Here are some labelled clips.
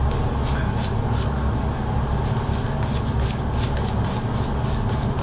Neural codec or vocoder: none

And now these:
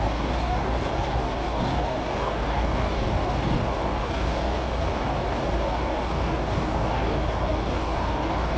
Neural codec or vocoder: codec, DAC